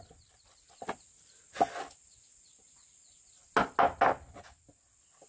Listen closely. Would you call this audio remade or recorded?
recorded